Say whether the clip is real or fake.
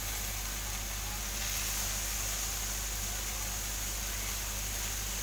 real